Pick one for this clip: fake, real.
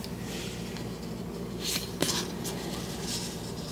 real